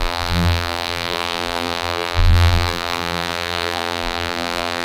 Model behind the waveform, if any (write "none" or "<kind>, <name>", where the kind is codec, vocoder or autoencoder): vocoder, BigVGAN v2